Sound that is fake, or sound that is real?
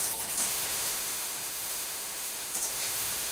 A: fake